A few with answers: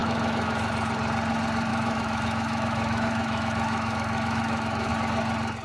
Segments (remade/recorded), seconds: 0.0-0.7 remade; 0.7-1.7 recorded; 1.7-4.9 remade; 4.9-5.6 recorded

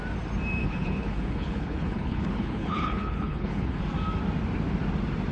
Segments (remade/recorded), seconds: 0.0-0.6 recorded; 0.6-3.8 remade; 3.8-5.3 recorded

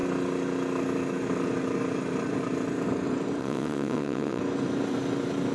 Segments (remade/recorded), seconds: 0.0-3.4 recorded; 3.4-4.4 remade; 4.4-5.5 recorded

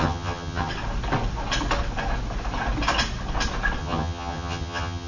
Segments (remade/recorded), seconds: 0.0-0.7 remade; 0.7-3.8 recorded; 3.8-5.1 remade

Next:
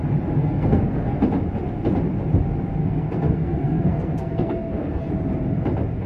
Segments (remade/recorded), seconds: 0.0-0.4 recorded; 0.4-1.2 remade; 1.2-2.8 recorded; 2.8-5.1 remade; 5.1-6.1 recorded

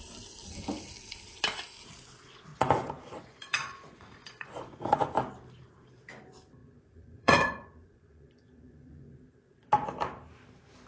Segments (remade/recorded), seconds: 0.0-2.5 recorded; 2.5-5.1 remade; 5.1-6.6 recorded; 6.6-9.1 remade; 9.1-10.9 recorded